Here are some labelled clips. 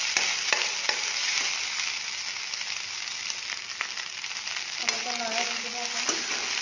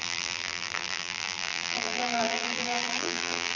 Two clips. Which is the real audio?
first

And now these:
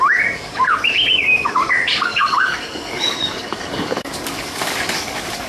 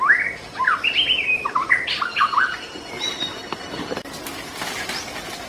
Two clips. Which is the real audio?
second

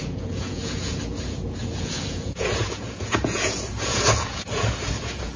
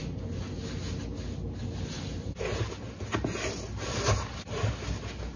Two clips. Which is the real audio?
second